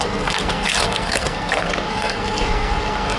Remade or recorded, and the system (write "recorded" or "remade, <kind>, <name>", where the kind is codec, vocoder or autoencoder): remade, codec, SNAC